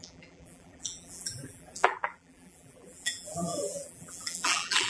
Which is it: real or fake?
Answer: fake